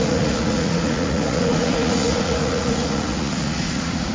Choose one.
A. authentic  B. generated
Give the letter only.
B